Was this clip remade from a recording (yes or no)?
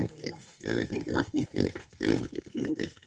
yes